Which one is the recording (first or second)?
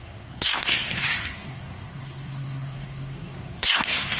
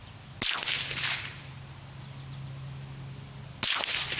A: second